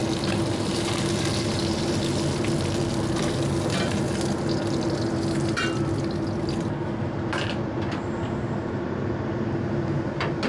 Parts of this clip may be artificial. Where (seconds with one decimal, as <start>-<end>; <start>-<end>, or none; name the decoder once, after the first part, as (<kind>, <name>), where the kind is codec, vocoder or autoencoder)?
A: none